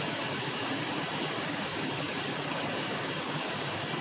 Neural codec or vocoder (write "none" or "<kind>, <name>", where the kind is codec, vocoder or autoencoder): codec, DAC